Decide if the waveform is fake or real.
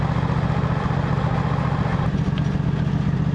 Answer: real